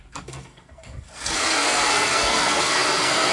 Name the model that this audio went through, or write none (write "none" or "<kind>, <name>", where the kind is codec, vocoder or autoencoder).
codec, SNAC